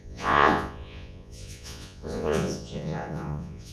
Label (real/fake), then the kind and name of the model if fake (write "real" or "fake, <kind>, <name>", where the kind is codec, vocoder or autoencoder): fake, vocoder, Vocos